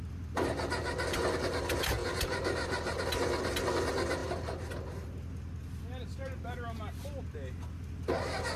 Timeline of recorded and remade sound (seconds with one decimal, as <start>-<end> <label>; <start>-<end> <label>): 0.0-2.0 recorded; 2.0-3.0 remade; 3.0-8.6 recorded